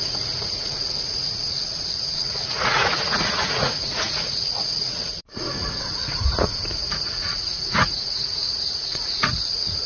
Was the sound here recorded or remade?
remade